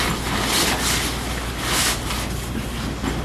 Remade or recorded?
recorded